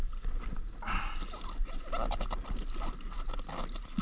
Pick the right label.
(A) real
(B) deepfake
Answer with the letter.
A